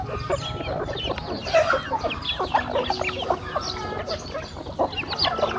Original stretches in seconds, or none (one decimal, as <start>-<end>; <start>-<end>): 0.0-5.6